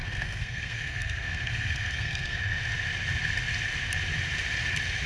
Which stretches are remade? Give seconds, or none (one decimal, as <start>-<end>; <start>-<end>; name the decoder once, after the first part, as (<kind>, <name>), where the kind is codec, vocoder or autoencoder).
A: 0.0-2.4 (codec, SNAC)